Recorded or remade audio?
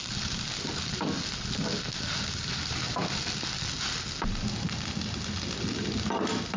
recorded